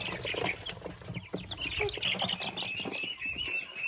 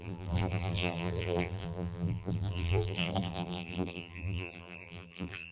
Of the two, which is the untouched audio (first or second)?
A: first